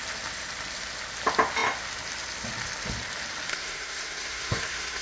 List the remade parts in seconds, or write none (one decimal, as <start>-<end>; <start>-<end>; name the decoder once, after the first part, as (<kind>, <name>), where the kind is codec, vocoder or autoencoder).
3.5-5.0 (codec, SNAC)